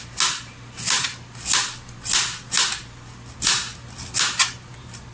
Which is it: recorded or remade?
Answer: recorded